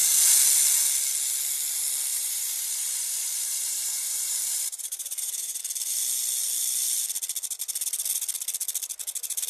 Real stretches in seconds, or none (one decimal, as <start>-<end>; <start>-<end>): 0.0-2.1; 5.6-9.5